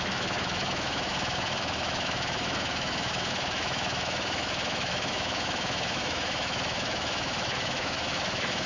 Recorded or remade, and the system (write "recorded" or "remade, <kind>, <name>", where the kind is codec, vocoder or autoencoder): remade, autoencoder, DAC-VAE